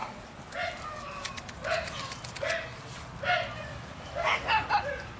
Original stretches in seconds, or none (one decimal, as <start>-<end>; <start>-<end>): 0.0-5.2